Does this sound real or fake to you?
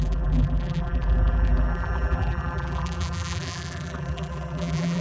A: fake